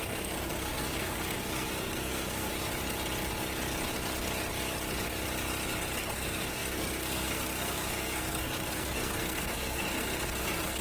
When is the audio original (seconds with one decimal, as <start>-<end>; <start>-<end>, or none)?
2.5-6.0